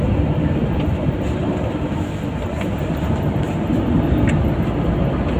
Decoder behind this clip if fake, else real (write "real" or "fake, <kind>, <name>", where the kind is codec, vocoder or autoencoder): real